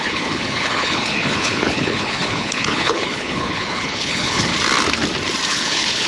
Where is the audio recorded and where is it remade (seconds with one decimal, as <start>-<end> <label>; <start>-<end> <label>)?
0.0-4.5 remade; 4.5-5.5 recorded; 5.5-6.1 remade